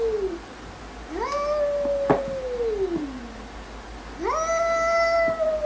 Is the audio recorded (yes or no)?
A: yes